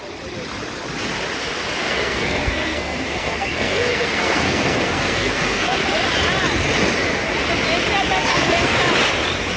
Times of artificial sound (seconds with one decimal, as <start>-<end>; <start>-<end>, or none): 1.8-5.8; 8.3-8.8

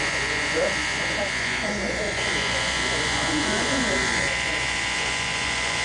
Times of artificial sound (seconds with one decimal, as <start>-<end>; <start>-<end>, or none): 0.0-5.8

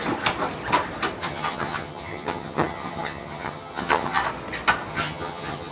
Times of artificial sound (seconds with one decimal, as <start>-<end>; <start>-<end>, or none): 1.2-4.2; 4.9-5.7

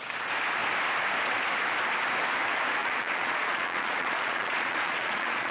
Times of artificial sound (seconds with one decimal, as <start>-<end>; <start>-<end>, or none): 2.8-5.5

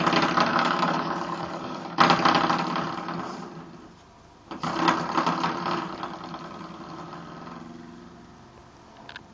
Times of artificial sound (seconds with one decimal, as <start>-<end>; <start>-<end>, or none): 0.5-2.0

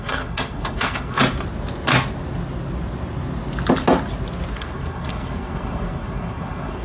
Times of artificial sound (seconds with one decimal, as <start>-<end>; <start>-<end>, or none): 0.0-1.2; 4.5-6.8

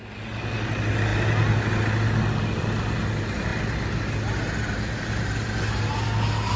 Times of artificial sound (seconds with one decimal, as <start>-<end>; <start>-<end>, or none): none

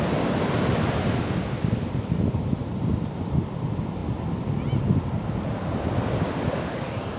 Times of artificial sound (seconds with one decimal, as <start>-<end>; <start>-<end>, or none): none